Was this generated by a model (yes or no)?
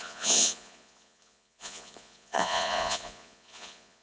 yes